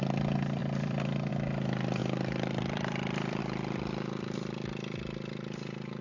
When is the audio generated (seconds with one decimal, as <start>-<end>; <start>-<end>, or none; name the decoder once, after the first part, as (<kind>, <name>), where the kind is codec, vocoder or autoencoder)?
0.6-1.3 (vocoder, BigVGAN v2); 2.0-3.4